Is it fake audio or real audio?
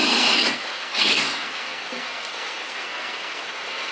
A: fake